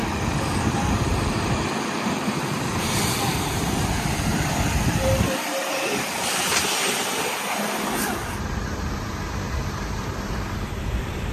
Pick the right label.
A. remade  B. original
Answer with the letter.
A